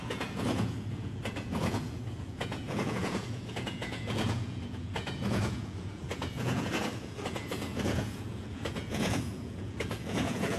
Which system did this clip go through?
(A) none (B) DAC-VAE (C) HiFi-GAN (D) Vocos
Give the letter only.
D